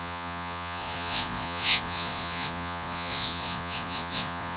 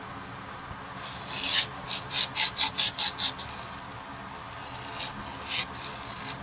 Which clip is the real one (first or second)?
second